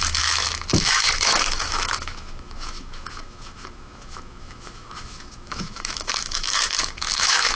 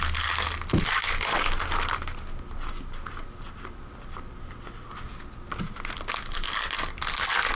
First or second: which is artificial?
first